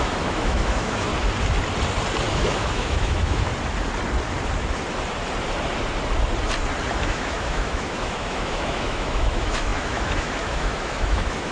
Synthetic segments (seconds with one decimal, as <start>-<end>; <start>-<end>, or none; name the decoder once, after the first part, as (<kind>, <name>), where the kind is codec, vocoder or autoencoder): 0.0-1.1 (autoencoder, DAC-VAE); 2.3-3.5; 7.0-11.5